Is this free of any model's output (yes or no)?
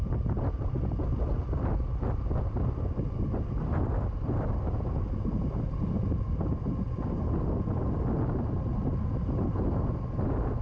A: yes